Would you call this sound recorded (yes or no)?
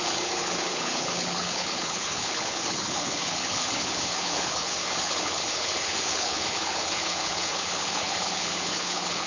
no